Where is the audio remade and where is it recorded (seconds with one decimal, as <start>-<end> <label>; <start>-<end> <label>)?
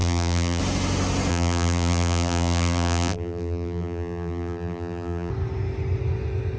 0.0-0.6 remade; 0.6-1.3 recorded; 1.3-5.3 remade; 5.3-6.6 recorded